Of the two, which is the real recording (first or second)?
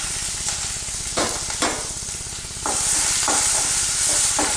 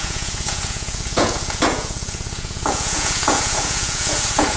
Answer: first